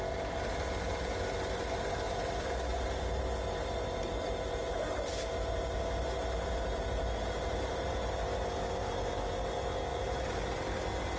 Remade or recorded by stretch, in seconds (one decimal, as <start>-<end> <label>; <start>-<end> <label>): 0.0-2.7 recorded; 2.7-3.2 remade; 3.2-3.7 recorded; 3.7-7.9 remade; 7.9-9.9 recorded; 9.9-10.4 remade; 10.4-11.2 recorded